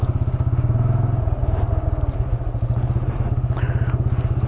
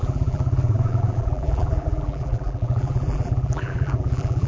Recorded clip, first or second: first